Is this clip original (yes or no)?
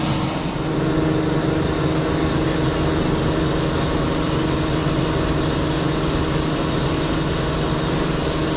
yes